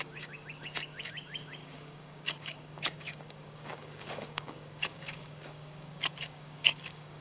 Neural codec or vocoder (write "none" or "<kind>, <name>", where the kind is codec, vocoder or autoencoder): codec, DAC